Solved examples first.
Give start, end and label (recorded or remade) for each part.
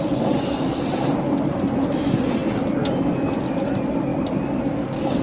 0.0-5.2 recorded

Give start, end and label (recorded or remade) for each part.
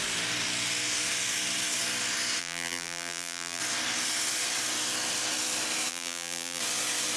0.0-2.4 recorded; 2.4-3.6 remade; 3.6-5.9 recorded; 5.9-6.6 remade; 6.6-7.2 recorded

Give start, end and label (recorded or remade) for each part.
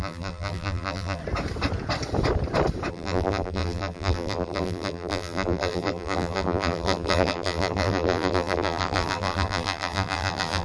0.0-1.2 remade; 1.2-2.9 recorded; 2.9-10.6 remade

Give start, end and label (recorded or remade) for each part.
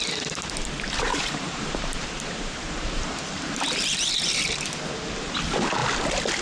0.0-1.1 recorded; 1.1-3.6 remade; 3.6-6.4 recorded